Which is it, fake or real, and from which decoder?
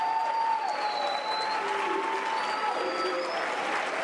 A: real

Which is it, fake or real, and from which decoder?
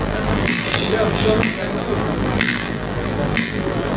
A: fake, vocoder, BigVGAN v2